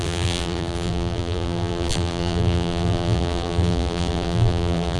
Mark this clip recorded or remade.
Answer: remade